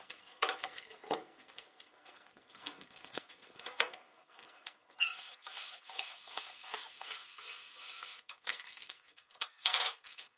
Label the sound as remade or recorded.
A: remade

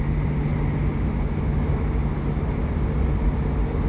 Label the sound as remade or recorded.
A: recorded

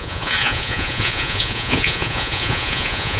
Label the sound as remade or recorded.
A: remade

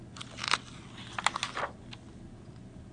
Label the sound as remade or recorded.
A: recorded